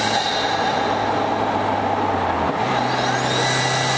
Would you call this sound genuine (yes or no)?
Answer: yes